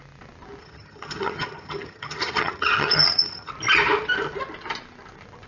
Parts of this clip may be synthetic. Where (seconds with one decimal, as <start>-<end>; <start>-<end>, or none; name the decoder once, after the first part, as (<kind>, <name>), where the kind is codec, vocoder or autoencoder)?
0.6-3.5 (vocoder, HiFi-GAN)